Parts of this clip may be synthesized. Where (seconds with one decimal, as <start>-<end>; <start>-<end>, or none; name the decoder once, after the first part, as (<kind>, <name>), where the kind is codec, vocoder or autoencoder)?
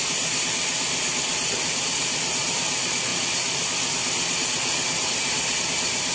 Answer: none